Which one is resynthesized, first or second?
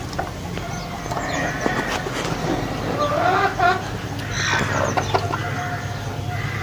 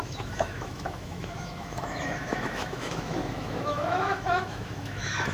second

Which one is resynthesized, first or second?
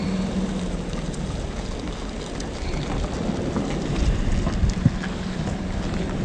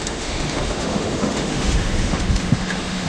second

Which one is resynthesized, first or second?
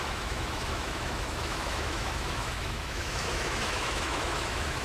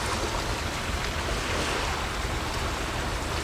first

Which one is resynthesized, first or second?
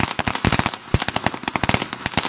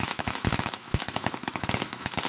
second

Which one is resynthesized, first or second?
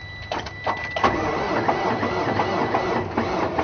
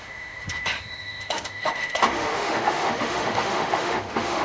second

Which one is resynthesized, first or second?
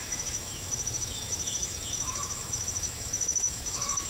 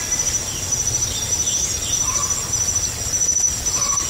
first